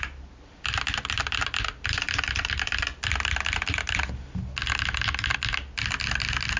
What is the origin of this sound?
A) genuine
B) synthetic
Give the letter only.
A